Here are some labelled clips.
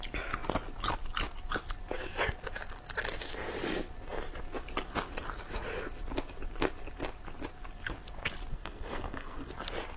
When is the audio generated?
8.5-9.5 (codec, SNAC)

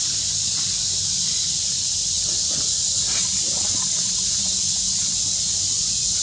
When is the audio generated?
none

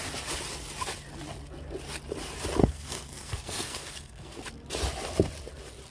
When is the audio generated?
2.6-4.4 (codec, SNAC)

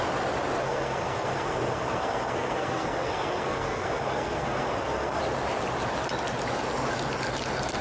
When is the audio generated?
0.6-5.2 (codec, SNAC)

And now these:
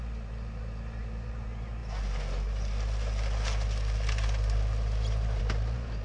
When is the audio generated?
none

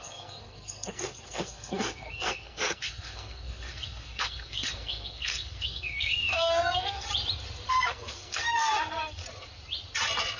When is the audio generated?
0.0-7.1 (codec, SNAC); 7.7-9.2

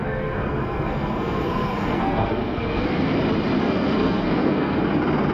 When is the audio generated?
0.0-3.2 (codec, SNAC); 3.6-4.8

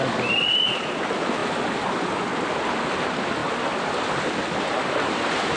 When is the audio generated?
none